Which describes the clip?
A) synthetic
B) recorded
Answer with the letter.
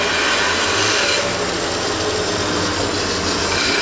B